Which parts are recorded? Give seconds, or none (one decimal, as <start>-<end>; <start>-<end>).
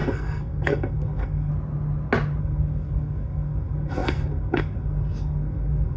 1.5-2.4